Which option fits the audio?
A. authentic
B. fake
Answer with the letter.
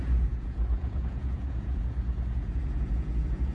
B